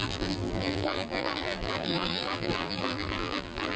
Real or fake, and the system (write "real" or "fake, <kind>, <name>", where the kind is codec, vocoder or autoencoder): fake, vocoder, BigVGAN v2